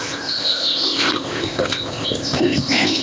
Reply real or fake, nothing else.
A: fake